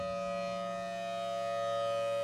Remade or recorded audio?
recorded